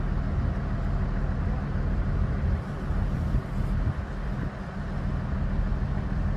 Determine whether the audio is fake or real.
real